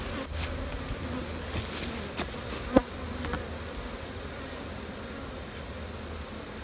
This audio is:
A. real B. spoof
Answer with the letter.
A